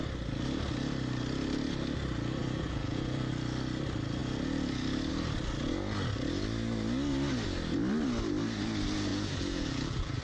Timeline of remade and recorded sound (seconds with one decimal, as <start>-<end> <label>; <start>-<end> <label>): 0.0-2.4 recorded; 2.4-3.3 remade; 3.3-9.1 recorded; 9.1-10.2 remade